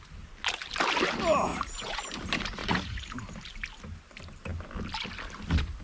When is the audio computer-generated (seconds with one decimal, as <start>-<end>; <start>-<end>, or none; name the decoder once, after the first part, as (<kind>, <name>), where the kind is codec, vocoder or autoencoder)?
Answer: 1.5-2.0 (vocoder, Vocos); 2.6-3.1